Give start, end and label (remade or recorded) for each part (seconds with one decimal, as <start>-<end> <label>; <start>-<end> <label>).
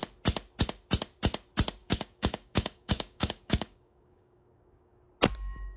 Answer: 0.0-1.8 recorded; 1.8-5.0 remade; 5.0-5.8 recorded